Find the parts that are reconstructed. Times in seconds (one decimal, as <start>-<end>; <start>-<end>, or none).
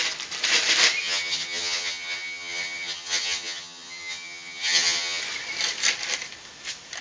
1.0-5.2